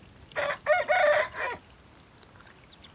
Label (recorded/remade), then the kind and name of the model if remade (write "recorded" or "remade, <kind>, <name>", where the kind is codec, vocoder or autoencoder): recorded